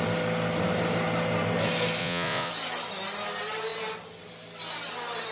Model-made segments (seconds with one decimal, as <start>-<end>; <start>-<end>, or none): 2.0-2.5